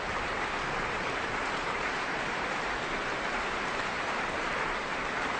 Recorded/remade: remade